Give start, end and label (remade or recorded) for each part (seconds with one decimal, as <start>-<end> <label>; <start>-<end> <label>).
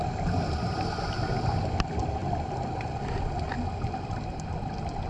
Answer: 0.0-5.1 recorded